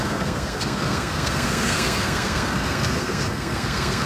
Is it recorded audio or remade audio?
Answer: remade